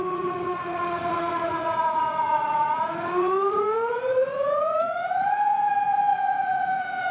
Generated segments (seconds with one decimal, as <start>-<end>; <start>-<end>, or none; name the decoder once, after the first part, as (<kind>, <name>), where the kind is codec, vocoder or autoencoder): 0.0-7.1 (vocoder, Vocos)